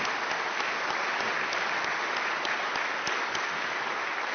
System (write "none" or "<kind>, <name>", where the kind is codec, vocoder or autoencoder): none